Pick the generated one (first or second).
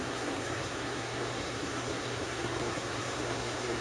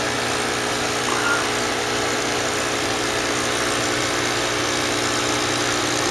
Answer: first